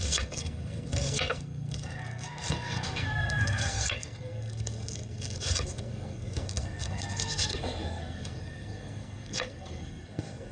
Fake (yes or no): yes